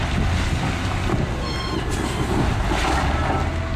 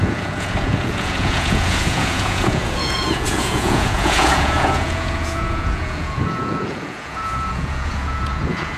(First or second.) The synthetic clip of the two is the second